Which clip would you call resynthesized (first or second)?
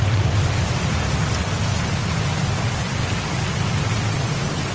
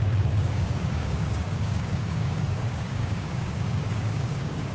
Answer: second